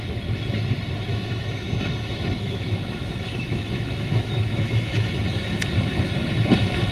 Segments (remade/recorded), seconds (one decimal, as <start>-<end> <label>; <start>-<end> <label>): 0.0-1.1 recorded; 1.1-5.2 remade; 5.2-6.9 recorded